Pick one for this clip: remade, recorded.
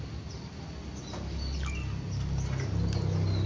recorded